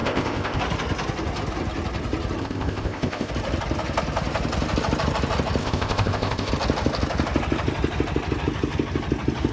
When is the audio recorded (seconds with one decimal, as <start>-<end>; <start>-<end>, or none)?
0.6-2.4; 3.3-5.6; 6.5-9.5